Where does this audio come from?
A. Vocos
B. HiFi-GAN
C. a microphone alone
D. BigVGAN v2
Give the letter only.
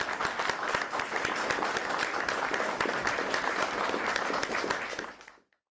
C